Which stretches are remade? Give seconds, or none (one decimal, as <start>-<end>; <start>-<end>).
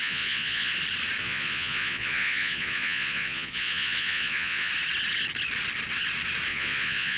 0.0-0.7; 1.2-4.7; 6.5-7.2